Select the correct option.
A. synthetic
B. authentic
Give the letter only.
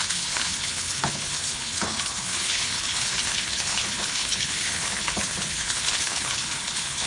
A